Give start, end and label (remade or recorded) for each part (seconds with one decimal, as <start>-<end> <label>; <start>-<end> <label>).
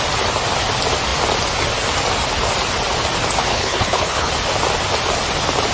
0.0-3.5 recorded; 3.5-4.3 remade; 4.3-5.7 recorded